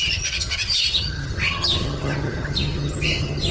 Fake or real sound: fake